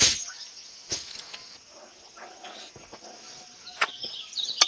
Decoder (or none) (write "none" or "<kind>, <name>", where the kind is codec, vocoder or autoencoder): none